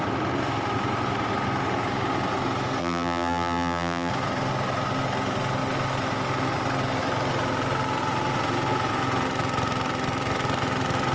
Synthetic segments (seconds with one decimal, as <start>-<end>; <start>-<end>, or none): 2.8-4.1